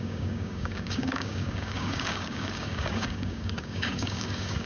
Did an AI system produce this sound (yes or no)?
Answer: yes